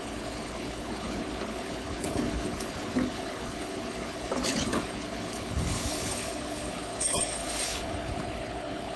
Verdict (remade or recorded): remade